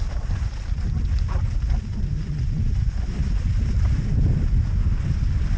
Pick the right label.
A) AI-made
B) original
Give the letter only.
B